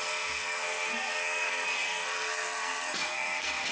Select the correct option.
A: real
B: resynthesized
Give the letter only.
B